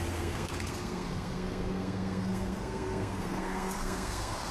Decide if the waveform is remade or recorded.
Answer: remade